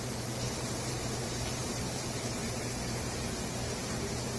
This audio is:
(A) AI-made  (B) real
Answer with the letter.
A